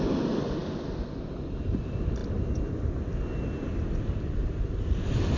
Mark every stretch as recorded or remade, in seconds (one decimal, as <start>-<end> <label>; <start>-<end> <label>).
0.0-5.4 recorded